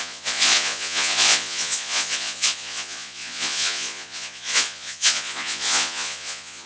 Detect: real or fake fake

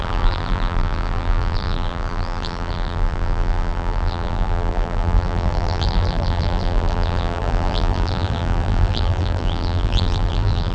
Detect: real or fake fake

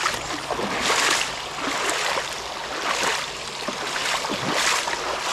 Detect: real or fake real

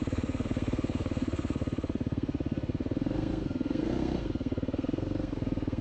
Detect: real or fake fake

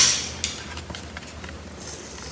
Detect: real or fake real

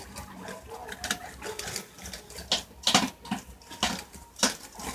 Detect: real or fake real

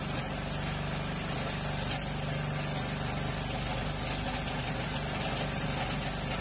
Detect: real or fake real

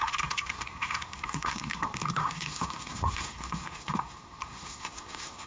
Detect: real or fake fake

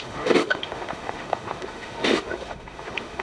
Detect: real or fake fake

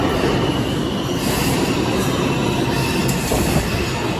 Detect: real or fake real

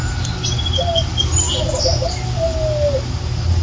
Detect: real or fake real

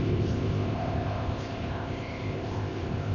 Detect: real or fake fake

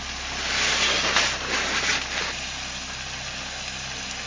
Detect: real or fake real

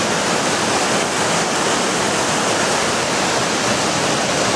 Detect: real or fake real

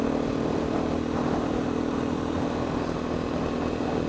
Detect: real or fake real